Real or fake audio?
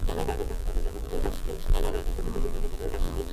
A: fake